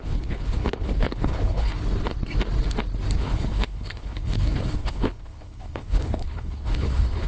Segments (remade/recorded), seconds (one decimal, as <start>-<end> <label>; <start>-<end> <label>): 0.0-1.7 remade; 1.7-3.2 recorded; 3.2-7.3 remade